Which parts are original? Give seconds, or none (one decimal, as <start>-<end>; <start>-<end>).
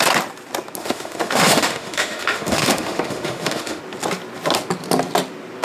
0.0-0.8; 3.8-5.6